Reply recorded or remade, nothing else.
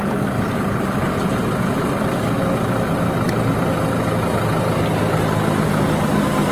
recorded